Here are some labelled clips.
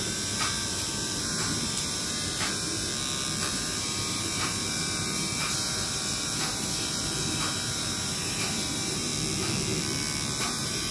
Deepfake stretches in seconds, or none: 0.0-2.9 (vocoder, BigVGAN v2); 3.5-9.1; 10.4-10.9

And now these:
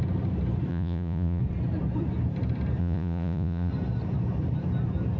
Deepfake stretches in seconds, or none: 0.7-1.4 (vocoder, Vocos); 2.8-3.7

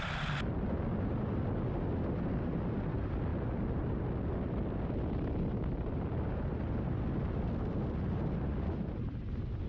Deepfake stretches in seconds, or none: none

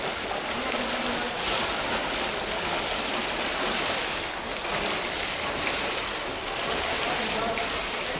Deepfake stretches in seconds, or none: none

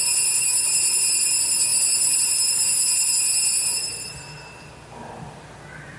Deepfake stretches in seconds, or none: 1.7-2.3 (vocoder, BigVGAN v2); 3.8-4.7

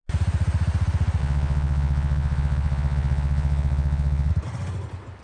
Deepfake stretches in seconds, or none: 1.2-4.3 (vocoder, Vocos)